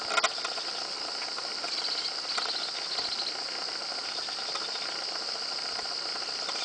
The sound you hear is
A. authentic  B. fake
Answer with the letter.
A